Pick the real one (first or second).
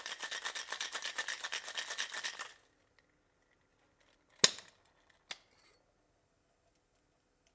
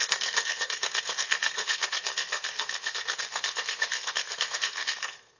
first